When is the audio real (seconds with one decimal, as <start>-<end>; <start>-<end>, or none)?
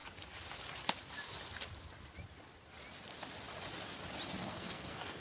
0.0-4.4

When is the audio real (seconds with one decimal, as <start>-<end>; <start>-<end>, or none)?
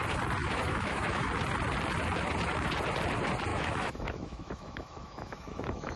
0.0-0.4; 1.3-3.5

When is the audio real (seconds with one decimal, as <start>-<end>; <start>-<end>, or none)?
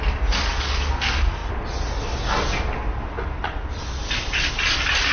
0.0-5.1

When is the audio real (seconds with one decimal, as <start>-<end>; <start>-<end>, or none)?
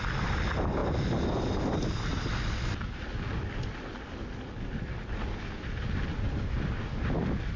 0.0-7.6